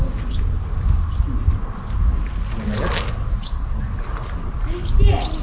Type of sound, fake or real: real